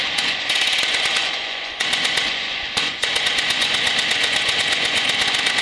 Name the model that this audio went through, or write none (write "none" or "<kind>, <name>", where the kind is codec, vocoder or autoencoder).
vocoder, Vocos